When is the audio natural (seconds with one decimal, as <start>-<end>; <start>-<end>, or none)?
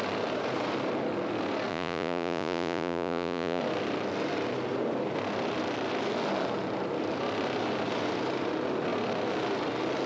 0.0-1.7; 3.6-10.1